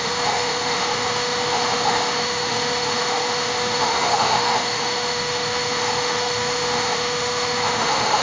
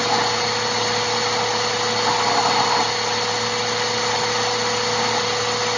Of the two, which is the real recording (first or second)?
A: second